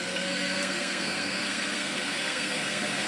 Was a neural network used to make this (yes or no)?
yes